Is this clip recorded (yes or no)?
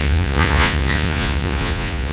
no